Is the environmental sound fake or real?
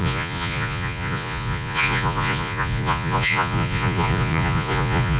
fake